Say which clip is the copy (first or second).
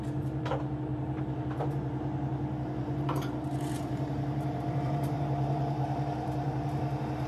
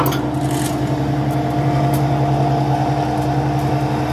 first